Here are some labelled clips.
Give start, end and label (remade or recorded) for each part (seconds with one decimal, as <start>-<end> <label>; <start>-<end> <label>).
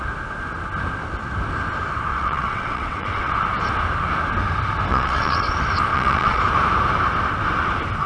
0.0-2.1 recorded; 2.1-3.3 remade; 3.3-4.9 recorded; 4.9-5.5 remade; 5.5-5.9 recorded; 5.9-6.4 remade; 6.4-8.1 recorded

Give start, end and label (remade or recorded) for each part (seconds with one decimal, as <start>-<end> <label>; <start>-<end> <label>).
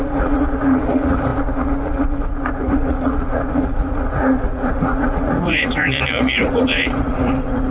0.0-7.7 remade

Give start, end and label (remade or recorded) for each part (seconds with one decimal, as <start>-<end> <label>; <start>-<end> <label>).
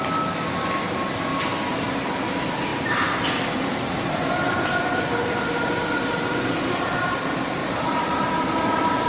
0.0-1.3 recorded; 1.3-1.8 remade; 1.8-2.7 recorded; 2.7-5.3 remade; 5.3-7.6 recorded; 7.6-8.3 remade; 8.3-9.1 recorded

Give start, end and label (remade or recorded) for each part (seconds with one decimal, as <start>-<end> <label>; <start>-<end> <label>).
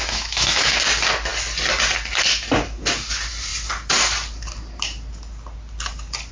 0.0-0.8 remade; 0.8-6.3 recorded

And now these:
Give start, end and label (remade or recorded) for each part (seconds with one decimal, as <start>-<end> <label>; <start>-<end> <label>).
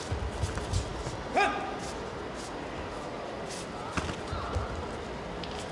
0.0-5.7 recorded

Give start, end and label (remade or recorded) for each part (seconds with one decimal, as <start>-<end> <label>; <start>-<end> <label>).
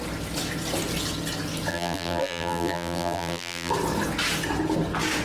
0.0-1.7 recorded; 1.7-3.7 remade; 3.7-5.2 recorded